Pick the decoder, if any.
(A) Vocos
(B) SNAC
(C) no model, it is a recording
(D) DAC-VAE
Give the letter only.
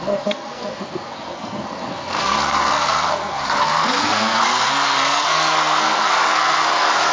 B